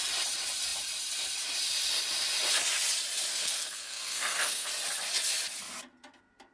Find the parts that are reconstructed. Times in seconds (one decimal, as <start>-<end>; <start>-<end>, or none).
3.3-4.7